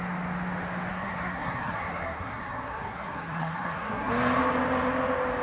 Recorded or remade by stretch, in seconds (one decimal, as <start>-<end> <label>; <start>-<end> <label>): 0.0-0.9 recorded; 0.9-4.1 remade; 4.1-5.4 recorded